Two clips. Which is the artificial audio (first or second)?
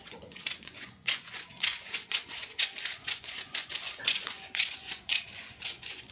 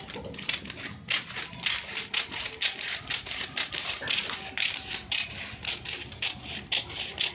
first